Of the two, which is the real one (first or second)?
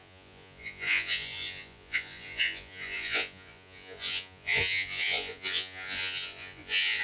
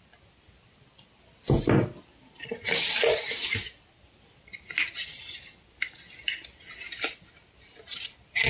second